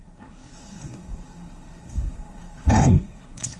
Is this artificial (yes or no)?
yes